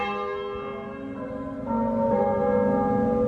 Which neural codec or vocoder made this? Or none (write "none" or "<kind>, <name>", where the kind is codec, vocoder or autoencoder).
none